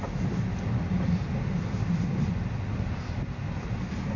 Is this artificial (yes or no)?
no